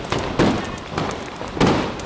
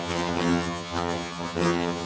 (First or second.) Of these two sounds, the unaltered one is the first